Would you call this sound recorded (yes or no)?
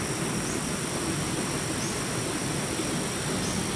yes